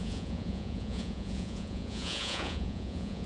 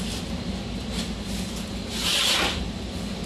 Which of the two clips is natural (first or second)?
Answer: second